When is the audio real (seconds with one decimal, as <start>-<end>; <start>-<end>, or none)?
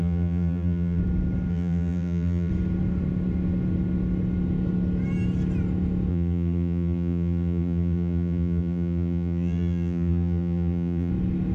1.0-1.5; 2.5-6.1; 11.1-11.5